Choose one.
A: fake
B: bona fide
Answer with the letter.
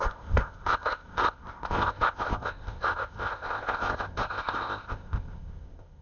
A